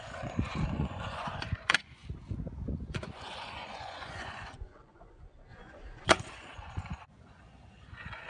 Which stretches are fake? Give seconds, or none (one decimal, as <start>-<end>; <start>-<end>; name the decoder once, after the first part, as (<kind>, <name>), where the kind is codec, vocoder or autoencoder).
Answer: 0.0-2.0 (vocoder, Vocos); 2.7-8.3